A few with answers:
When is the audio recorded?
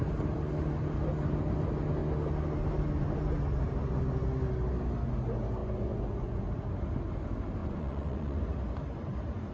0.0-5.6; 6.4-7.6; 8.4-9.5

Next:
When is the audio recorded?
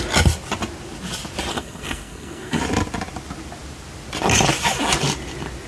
0.0-1.5; 2.6-5.7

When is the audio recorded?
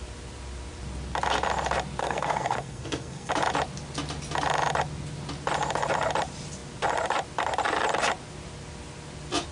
0.0-2.0; 3.3-9.5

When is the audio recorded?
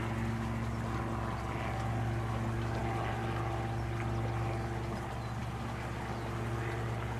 0.0-7.2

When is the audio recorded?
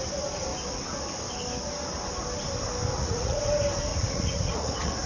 0.0-2.9; 3.4-3.9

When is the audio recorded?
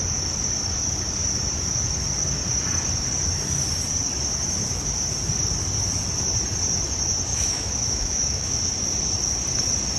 0.0-7.3; 8.6-10.0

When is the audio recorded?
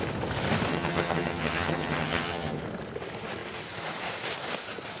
0.0-0.7; 2.6-5.0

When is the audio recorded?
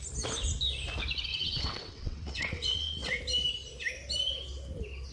0.0-1.3; 3.2-5.1